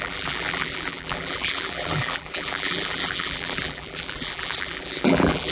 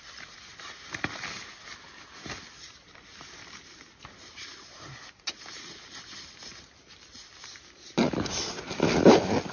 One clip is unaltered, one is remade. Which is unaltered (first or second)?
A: second